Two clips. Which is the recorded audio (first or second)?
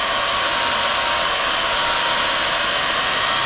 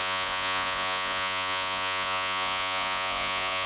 first